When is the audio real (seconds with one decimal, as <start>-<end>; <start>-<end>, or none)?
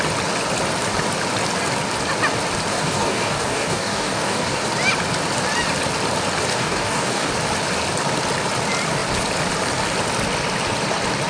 0.0-2.7; 4.6-6.5; 7.3-11.3